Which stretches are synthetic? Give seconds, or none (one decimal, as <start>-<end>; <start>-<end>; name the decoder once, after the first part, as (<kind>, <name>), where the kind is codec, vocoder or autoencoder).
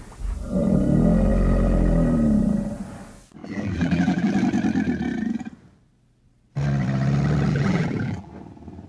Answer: 3.4-4.3 (vocoder, BigVGAN v2); 7.5-8.3